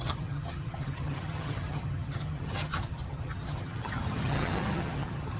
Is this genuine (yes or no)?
no